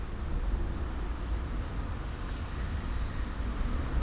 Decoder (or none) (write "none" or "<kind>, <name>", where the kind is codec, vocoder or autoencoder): none